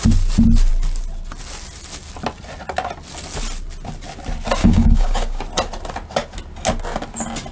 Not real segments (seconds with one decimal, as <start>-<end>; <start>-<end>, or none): 4.6-5.4